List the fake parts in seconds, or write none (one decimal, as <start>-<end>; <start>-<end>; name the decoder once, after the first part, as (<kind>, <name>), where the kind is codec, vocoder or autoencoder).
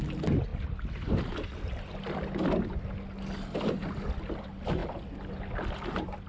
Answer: none